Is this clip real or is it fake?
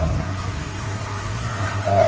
fake